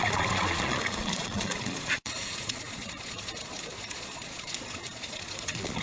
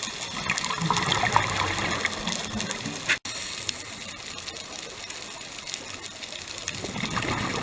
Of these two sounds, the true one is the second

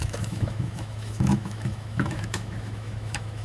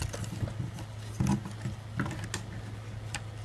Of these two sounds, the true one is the second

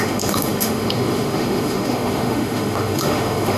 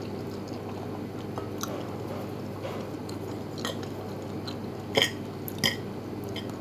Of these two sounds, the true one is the second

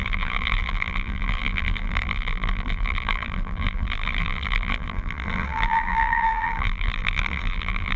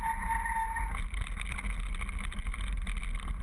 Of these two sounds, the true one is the second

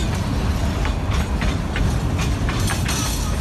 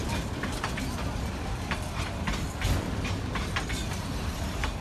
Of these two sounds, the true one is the first